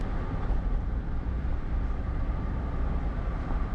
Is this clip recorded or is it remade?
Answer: recorded